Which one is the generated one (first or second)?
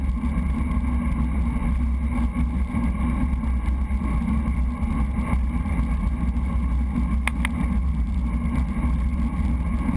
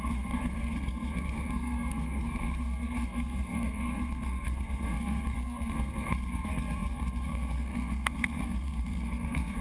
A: second